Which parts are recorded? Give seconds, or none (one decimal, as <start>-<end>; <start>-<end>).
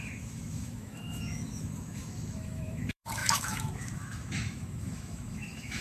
none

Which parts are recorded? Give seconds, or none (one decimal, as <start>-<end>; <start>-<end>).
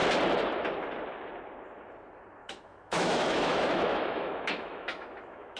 0.0-2.4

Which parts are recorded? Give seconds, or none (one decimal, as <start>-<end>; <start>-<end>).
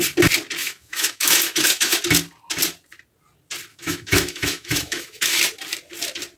0.0-0.6; 2.0-3.7; 5.4-6.4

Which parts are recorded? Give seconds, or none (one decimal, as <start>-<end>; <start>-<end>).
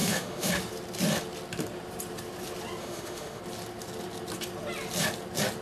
0.5-2.8; 3.4-5.6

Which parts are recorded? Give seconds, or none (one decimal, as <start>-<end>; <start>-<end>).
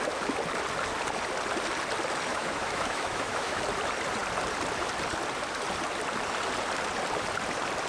0.0-2.3; 3.6-7.9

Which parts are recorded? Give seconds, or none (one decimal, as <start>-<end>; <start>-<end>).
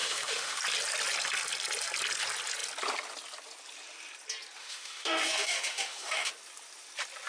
0.6-4.6; 6.3-7.3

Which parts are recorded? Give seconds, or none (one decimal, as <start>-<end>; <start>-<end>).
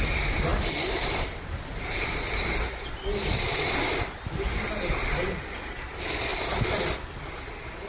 0.0-7.9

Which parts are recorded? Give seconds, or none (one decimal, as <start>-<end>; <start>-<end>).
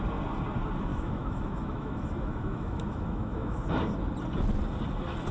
0.0-0.9; 3.6-5.3